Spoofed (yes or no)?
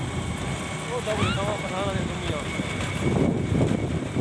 no